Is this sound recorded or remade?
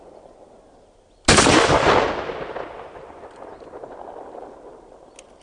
recorded